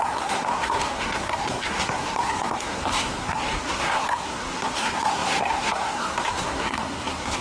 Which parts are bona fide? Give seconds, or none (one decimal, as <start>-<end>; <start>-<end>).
none